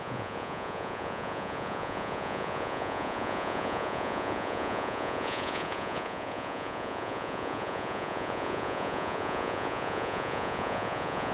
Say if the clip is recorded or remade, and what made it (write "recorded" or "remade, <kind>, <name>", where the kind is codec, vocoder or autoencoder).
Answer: remade, vocoder, Vocos